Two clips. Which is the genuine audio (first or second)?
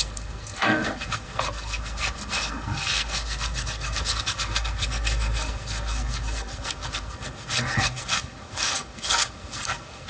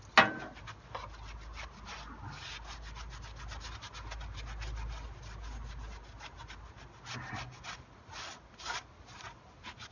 second